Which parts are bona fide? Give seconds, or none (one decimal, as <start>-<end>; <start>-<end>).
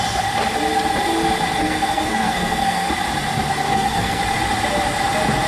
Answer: 0.0-1.6; 2.9-3.5; 4.2-5.5